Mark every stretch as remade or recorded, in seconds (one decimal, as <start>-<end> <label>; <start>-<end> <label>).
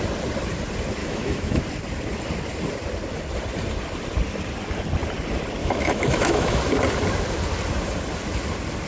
0.0-1.0 recorded; 1.0-1.6 remade; 1.6-5.6 recorded; 5.6-6.6 remade; 6.6-8.9 recorded